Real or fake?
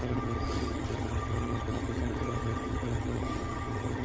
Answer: fake